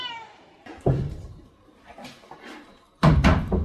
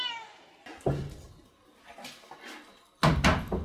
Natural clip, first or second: second